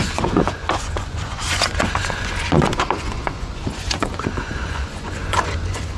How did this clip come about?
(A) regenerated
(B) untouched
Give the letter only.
A